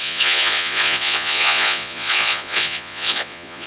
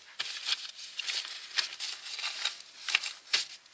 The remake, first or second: first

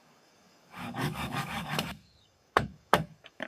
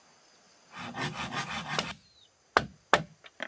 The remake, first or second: first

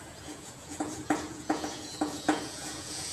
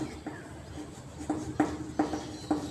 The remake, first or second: first